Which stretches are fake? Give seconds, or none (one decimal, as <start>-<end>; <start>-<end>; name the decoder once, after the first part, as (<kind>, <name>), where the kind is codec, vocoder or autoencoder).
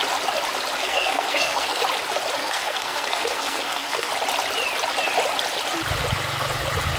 0.8-1.8 (codec, SNAC); 2.4-4.1